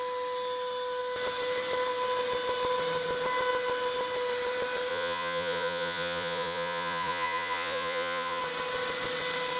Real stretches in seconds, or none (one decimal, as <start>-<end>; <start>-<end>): 0.0-4.9; 8.4-9.6